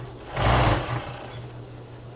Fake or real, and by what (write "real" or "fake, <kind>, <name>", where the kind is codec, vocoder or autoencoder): real